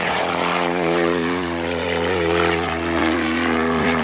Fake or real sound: fake